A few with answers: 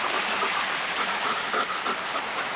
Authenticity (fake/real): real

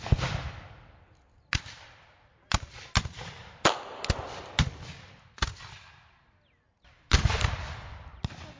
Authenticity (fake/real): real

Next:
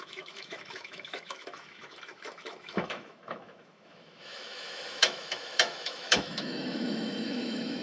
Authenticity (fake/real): fake